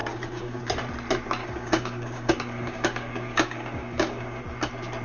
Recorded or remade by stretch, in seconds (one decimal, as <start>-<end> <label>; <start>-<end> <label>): 0.0-0.6 remade; 0.6-1.4 recorded; 1.4-4.4 remade; 4.4-5.0 recorded